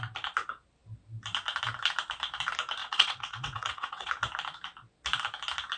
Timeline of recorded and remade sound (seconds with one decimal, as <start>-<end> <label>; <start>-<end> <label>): 0.0-2.8 recorded; 2.8-4.1 remade; 4.1-5.8 recorded